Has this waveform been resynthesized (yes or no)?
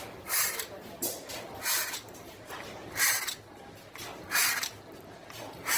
yes